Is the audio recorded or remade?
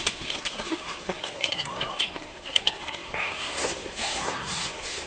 remade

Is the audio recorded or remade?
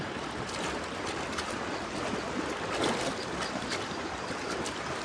recorded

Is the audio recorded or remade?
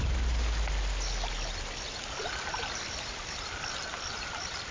recorded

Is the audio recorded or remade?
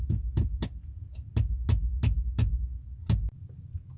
recorded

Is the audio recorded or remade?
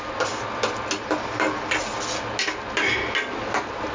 recorded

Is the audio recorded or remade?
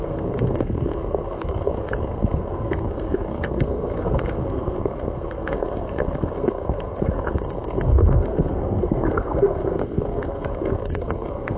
remade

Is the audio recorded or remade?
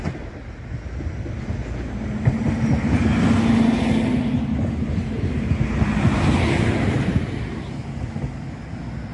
recorded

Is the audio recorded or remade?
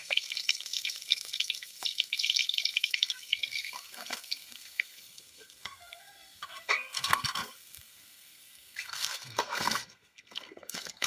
remade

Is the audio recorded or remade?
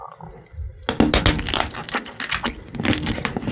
recorded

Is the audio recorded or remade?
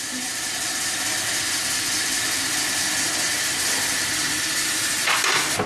recorded